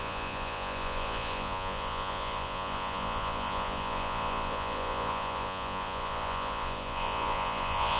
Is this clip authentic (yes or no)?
no